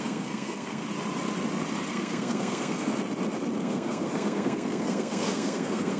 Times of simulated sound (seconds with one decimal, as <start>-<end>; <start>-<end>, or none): 0.0-0.8; 1.9-2.9; 3.6-6.0